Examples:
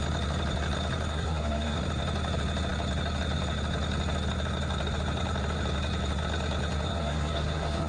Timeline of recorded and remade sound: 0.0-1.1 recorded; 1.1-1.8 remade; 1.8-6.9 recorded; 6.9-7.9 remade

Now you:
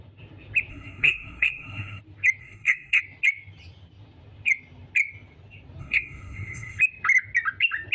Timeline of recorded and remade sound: 0.0-0.7 recorded; 0.7-2.0 remade; 2.0-2.4 recorded; 2.4-3.0 remade; 3.0-5.8 recorded; 5.8-6.8 remade; 6.8-7.9 recorded

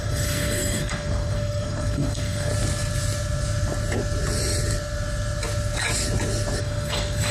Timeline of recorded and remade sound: 0.0-2.5 remade; 2.5-6.6 recorded; 6.6-7.3 remade

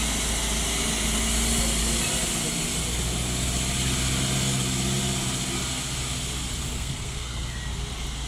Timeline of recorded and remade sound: 0.0-6.7 recorded; 6.7-7.6 remade; 7.6-8.3 recorded

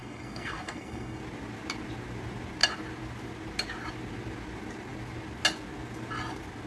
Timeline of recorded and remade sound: 0.0-1.2 remade; 1.2-6.7 recorded

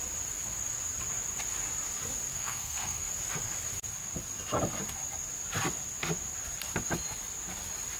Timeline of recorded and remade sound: 0.0-2.3 recorded; 2.3-3.1 remade; 3.1-8.0 recorded